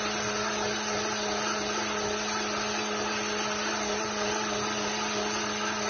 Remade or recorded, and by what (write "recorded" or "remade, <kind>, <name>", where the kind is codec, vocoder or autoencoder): recorded